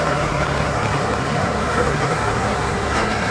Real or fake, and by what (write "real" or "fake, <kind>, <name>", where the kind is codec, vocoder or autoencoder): fake, codec, SNAC